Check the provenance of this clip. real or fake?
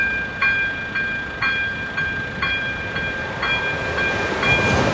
real